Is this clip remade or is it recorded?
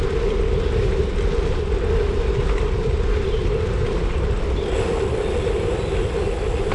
recorded